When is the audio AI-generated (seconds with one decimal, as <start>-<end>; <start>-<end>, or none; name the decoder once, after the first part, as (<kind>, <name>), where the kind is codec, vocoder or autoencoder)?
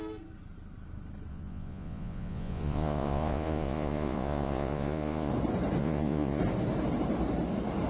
1.3-5.3 (vocoder, Vocos); 5.8-6.4